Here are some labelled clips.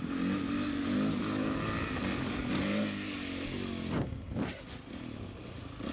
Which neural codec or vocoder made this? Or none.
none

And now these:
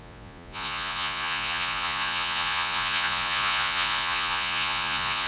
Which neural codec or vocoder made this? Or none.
vocoder, Vocos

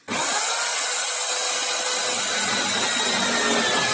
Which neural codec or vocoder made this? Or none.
none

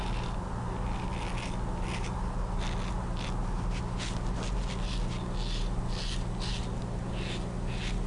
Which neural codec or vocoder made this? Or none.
none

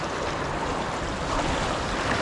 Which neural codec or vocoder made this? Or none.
none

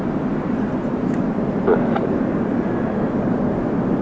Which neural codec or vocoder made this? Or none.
none